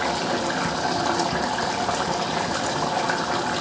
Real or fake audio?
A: real